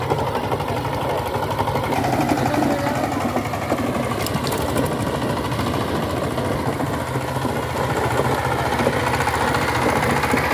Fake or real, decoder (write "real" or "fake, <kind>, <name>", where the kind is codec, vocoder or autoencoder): real